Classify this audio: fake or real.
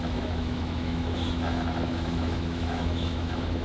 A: fake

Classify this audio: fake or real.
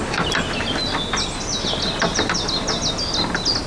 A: real